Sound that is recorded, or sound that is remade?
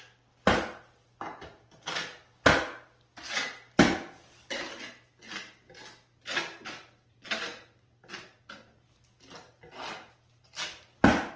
recorded